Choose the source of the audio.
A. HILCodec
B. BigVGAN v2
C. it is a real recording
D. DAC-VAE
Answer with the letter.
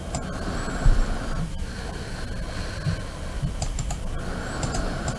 C